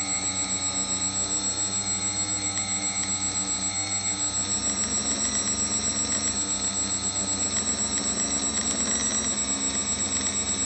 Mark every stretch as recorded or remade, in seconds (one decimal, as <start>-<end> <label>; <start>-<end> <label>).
0.0-10.6 recorded